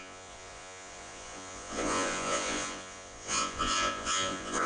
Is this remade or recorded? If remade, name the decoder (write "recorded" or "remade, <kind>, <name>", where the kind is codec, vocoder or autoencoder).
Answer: remade, vocoder, Vocos